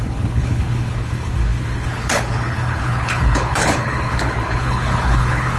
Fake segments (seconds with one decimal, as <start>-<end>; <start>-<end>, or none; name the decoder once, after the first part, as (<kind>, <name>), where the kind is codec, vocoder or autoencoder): 0.0-5.6 (codec, HILCodec)

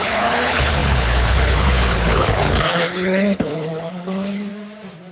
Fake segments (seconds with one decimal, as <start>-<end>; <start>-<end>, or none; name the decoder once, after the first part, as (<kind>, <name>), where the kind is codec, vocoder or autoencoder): 0.0-4.5 (codec, HILCodec)

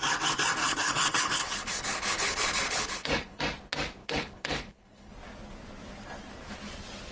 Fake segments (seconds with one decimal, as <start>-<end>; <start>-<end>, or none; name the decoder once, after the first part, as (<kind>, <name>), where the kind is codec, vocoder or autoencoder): 0.6-3.4 (codec, HILCodec); 4.0-5.1

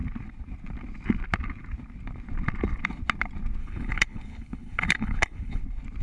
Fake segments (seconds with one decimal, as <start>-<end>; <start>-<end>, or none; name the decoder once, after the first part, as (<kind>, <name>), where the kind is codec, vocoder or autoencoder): 3.6-5.6 (codec, HILCodec)

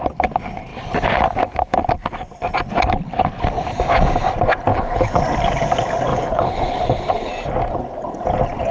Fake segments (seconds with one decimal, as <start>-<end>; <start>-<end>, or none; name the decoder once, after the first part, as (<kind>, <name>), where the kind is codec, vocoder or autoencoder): 4.7-5.2 (codec, HILCodec); 6.1-7.3